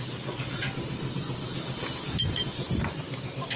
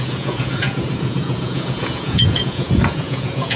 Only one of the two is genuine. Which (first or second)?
first